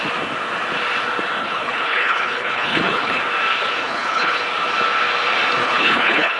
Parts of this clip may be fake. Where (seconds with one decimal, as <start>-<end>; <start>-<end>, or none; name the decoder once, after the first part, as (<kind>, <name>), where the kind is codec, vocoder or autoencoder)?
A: 1.4-3.2 (codec, HILCodec); 3.8-4.4; 5.6-6.4

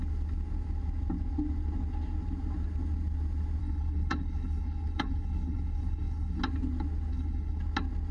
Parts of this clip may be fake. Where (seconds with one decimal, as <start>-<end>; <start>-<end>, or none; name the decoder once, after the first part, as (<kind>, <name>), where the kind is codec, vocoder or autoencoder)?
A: 3.6-6.4 (codec, HILCodec); 7.1-7.6

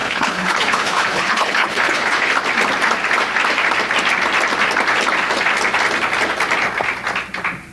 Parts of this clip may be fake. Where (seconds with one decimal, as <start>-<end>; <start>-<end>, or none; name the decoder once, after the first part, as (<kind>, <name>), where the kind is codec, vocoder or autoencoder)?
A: 0.0-2.3 (codec, HILCodec)

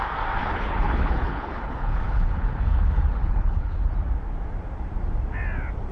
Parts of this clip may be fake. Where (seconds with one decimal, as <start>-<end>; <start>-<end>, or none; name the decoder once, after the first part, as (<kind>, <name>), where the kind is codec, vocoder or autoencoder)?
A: 0.4-3.9 (codec, HILCodec)